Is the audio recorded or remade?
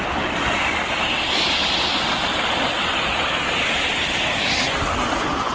recorded